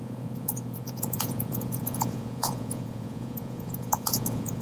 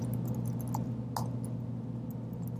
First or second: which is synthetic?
first